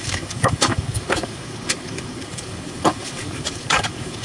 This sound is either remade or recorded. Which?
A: remade